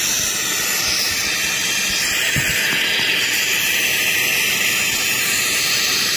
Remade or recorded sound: recorded